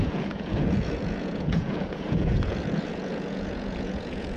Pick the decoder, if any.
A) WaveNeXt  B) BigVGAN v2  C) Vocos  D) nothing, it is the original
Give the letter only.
C